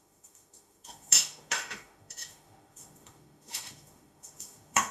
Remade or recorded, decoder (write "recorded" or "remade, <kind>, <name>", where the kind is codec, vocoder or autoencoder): remade, autoencoder, DAC-VAE